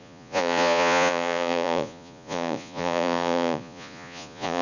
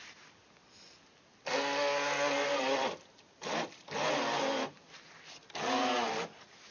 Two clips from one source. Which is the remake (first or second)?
first